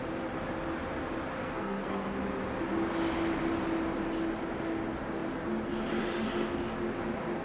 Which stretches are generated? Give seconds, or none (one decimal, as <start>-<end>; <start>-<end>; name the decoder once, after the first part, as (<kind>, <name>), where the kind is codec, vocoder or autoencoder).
1.4-2.2 (codec, SNAC)